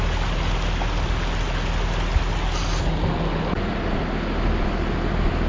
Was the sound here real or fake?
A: real